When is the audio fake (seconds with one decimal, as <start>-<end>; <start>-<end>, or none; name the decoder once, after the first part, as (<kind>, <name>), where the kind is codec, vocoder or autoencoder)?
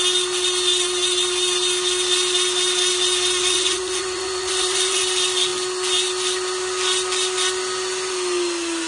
3.4-5.0 (vocoder, Vocos)